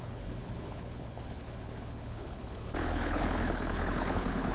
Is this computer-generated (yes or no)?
yes